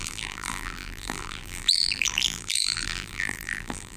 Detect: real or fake fake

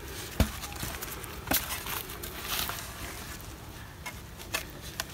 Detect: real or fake real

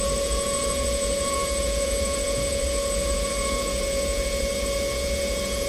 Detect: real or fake fake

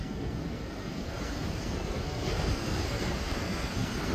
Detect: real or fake fake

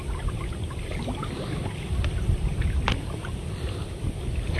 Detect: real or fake real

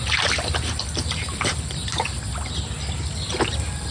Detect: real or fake real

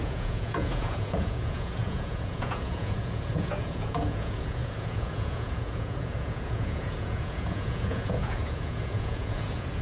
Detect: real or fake fake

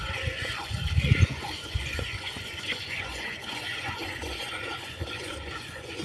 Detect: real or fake fake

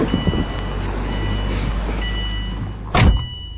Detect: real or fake real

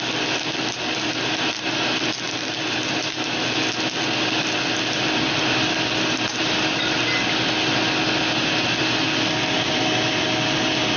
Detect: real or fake real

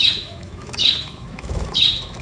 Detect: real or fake fake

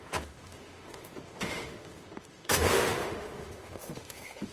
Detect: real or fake fake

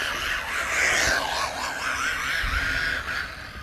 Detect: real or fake real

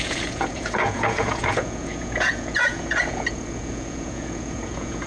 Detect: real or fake fake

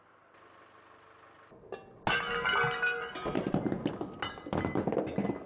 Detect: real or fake real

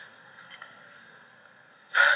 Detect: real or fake fake